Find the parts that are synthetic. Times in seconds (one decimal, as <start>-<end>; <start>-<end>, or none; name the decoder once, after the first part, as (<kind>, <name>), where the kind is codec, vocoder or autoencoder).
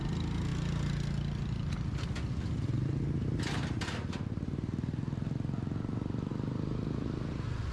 3.2-5.0 (vocoder, BigVGAN v2)